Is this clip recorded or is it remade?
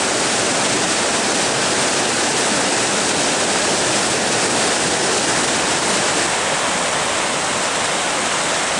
recorded